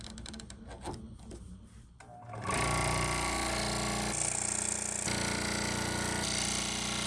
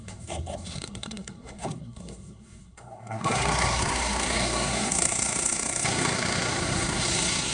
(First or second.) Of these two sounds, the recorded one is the first